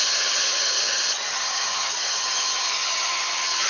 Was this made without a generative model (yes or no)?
no